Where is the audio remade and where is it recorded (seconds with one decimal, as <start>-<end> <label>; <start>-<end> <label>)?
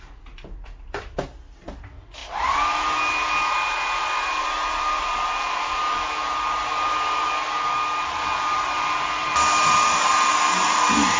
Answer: 0.0-11.2 recorded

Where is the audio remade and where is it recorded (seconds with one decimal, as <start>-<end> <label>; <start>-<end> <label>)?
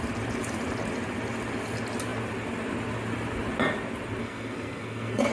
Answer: 0.0-4.2 recorded; 4.2-5.3 remade